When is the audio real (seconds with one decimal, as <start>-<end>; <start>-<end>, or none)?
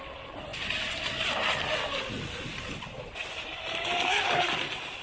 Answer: 0.0-5.0